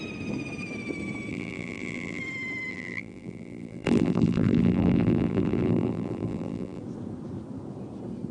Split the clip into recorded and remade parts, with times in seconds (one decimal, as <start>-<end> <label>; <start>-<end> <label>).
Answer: 0.0-1.3 recorded; 1.3-2.2 remade; 2.2-2.7 recorded; 2.7-6.8 remade; 6.8-8.3 recorded